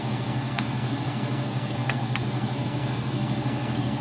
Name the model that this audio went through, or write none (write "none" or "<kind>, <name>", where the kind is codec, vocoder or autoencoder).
codec, SNAC